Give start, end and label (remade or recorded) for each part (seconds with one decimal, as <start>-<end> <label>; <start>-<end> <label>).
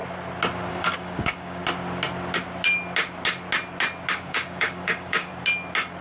0.0-0.7 recorded; 0.7-1.6 remade; 1.6-4.1 recorded; 4.1-5.3 remade; 5.3-6.0 recorded